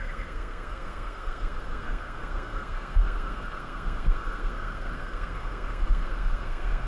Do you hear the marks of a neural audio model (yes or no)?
yes